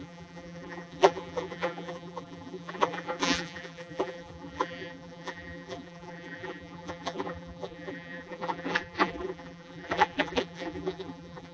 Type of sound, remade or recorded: remade